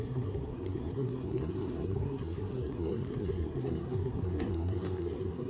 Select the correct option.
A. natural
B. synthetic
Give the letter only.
B